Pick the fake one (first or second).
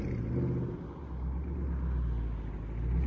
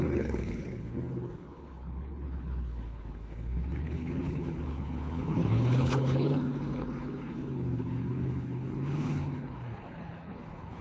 second